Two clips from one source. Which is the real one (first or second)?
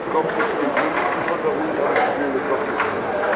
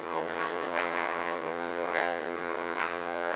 first